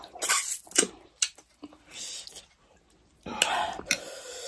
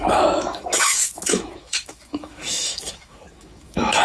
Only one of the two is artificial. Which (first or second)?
second